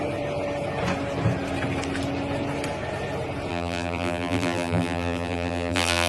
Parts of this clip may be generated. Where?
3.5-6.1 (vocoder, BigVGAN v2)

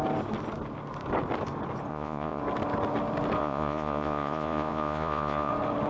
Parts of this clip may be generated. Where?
1.9-2.4 (vocoder, Vocos); 3.4-5.5

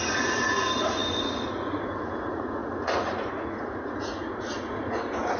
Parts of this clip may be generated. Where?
0.0-5.4 (vocoder, Vocos)